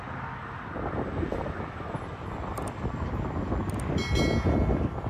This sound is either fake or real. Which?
real